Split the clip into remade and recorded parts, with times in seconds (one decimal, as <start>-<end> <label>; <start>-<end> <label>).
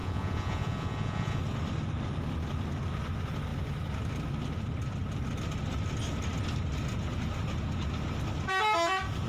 0.0-1.4 remade; 1.4-9.3 recorded